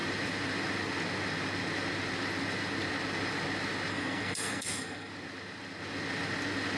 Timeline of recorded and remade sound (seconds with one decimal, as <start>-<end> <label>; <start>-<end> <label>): 0.0-3.9 recorded; 3.9-5.1 remade; 5.1-6.8 recorded